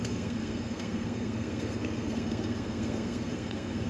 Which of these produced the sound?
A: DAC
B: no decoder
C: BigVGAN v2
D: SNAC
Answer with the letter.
D